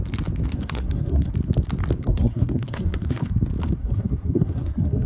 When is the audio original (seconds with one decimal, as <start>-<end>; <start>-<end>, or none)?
0.0-0.5; 1.3-2.0; 3.3-3.8